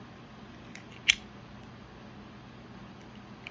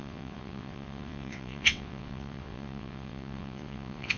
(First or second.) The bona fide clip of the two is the first